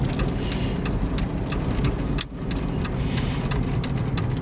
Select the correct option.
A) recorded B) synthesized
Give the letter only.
A